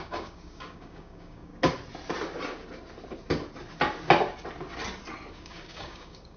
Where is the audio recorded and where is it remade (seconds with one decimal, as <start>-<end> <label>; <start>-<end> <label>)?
0.0-1.5 remade; 1.5-5.3 recorded; 5.3-6.4 remade